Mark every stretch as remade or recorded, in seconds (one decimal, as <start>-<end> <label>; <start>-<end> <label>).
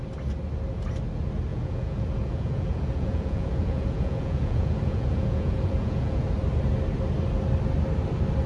0.0-1.5 recorded; 1.5-6.2 remade; 6.2-8.5 recorded